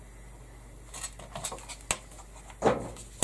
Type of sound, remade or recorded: recorded